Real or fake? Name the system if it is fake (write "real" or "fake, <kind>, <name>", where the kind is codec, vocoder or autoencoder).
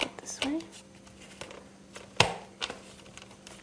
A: real